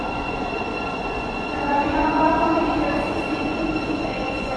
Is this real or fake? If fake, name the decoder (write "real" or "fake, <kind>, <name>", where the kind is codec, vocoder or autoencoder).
fake, vocoder, Vocos